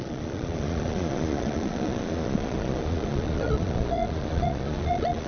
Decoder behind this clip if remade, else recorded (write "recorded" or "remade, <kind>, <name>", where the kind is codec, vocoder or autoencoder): remade, vocoder, Vocos